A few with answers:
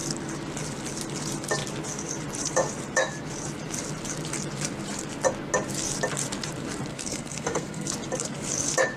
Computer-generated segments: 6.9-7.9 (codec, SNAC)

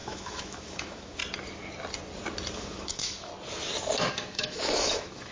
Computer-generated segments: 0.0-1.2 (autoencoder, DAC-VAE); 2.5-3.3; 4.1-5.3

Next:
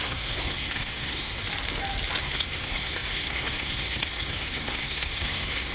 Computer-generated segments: 0.0-1.4 (codec, SNAC); 2.2-5.7

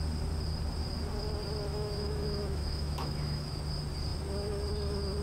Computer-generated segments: 1.7-3.6 (autoencoder, DAC-VAE)